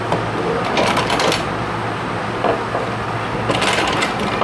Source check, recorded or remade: recorded